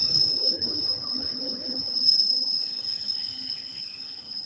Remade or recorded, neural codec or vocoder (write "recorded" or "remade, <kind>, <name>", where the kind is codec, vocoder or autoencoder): remade, codec, HILCodec